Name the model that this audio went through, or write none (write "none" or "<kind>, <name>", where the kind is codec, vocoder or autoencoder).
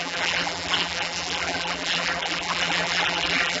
vocoder, BigVGAN v2